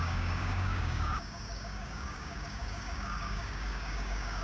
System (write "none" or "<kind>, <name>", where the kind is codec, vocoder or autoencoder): codec, DAC